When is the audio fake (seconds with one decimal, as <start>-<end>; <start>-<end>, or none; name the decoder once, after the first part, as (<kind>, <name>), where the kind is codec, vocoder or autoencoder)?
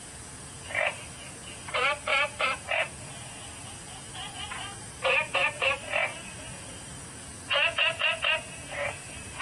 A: 0.0-9.4 (vocoder, Vocos)